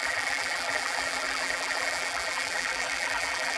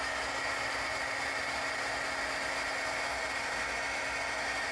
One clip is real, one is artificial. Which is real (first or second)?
second